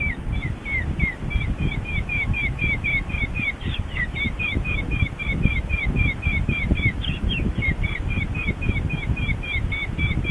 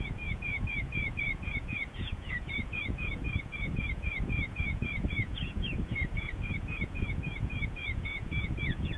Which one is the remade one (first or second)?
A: second